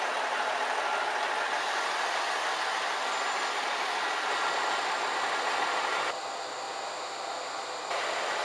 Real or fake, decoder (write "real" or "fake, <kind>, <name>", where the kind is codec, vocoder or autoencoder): real